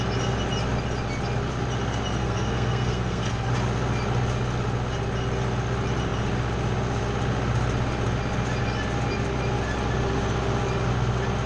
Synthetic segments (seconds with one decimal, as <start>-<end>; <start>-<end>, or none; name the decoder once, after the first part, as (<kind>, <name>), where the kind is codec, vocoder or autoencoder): 2.2-3.5 (codec, SNAC)